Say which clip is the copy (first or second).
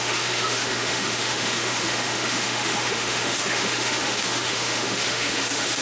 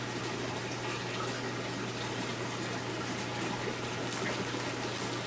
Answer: first